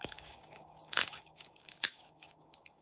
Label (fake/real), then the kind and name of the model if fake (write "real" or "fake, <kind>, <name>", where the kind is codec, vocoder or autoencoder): fake, codec, DAC